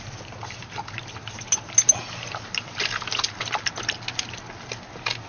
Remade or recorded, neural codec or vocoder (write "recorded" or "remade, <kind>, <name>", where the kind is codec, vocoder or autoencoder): recorded